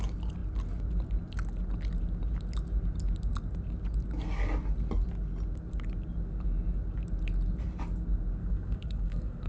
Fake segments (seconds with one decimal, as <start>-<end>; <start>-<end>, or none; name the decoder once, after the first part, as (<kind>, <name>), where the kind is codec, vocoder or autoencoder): 8.4-9.5 (codec, SNAC)